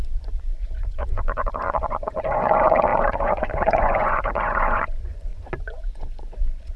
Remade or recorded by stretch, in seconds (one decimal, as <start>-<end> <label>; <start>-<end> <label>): 0.0-6.8 remade